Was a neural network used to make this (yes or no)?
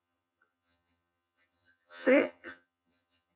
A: yes